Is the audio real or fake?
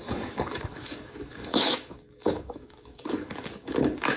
fake